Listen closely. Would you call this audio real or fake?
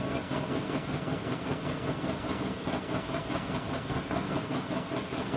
fake